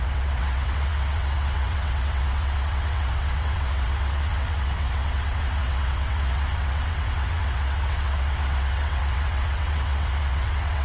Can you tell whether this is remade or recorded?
remade